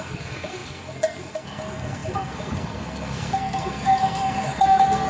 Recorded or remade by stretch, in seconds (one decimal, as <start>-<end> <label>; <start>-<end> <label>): 0.0-5.1 remade